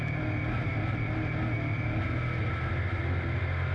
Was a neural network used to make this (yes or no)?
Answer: no